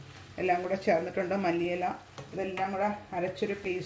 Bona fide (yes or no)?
yes